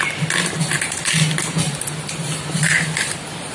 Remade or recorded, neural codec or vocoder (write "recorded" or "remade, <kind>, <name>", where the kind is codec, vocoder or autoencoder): recorded